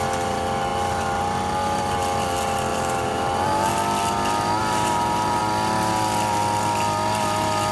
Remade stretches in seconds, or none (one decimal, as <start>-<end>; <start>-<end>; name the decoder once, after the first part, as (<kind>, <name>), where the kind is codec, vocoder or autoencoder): 2.7-3.7 (vocoder, BigVGAN v2); 4.6-5.4